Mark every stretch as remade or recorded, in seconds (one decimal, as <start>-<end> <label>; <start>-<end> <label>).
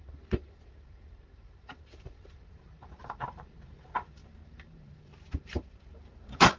0.0-6.6 remade